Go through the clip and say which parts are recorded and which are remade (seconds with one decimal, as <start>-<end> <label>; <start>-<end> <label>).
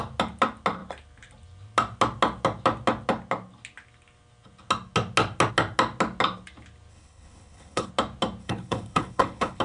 0.0-6.9 recorded; 6.9-7.9 remade; 7.9-8.4 recorded; 8.4-9.6 remade